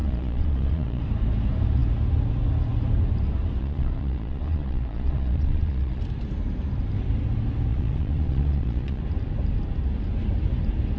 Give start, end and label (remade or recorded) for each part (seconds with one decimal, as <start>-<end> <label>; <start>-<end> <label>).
0.0-1.0 remade; 1.0-3.6 recorded; 3.6-6.0 remade; 6.0-7.7 recorded; 7.7-9.0 remade; 9.0-11.0 recorded